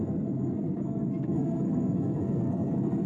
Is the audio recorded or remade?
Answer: remade